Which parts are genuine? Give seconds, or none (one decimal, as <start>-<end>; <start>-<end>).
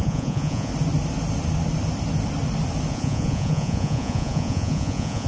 0.7-2.9